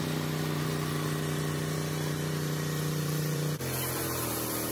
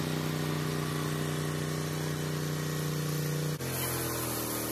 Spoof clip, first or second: first